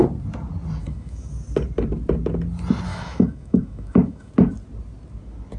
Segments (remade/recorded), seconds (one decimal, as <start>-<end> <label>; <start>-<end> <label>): 0.0-0.8 recorded; 0.8-1.3 remade; 1.3-2.9 recorded; 2.9-4.3 remade; 4.3-5.6 recorded